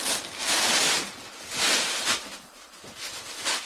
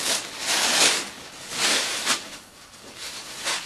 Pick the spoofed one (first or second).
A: second